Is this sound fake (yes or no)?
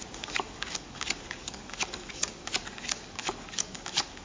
yes